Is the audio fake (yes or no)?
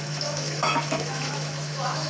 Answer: yes